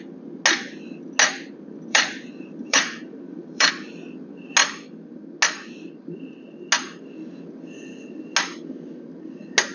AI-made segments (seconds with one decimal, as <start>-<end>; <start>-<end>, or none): 1.9-3.7